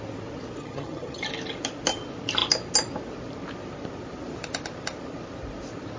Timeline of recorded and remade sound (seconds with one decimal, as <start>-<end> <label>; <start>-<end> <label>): 0.0-0.6 recorded; 0.6-1.2 remade; 1.2-6.0 recorded